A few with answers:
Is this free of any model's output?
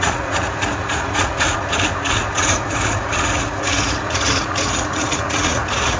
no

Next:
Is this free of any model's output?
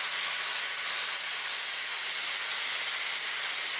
yes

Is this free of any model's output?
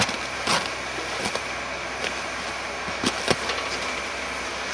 yes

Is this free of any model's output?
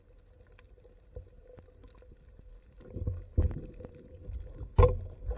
yes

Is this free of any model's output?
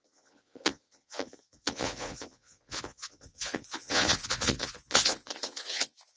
no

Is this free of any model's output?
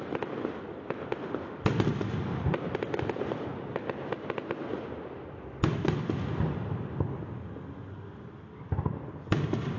yes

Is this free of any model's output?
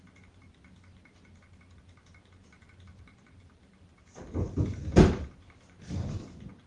yes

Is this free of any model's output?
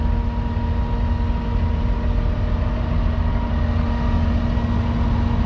yes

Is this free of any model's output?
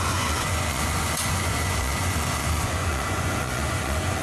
no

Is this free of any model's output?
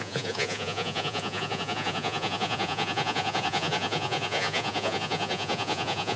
no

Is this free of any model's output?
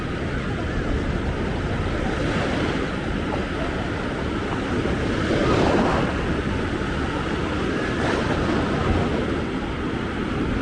yes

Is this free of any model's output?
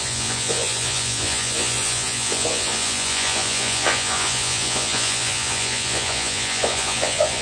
no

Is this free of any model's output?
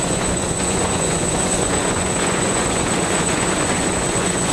no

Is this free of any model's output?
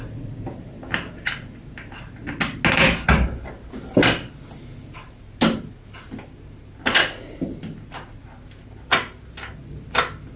yes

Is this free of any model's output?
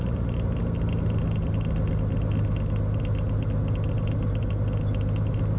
yes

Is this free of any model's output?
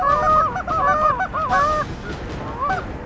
yes